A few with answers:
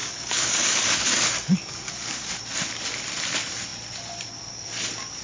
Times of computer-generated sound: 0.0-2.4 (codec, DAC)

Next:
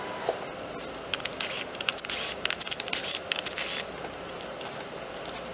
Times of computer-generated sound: none

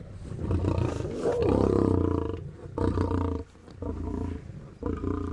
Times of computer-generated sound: none

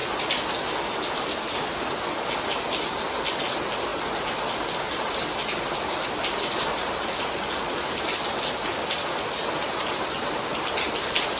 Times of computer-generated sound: none

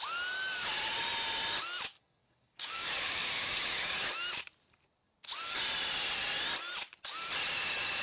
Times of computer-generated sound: 2.2-3.9 (codec, DAC)

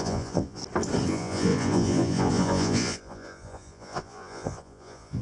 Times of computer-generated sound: 0.0-0.6 (vocoder, Vocos); 1.1-5.2

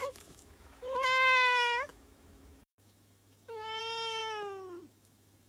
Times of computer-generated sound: 0.0-4.2 (autoencoder, DAC-VAE); 4.9-5.5

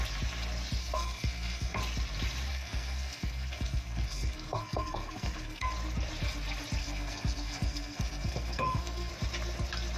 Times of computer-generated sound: 0.8-1.8 (codec, SNAC); 2.5-5.7; 6.8-9.1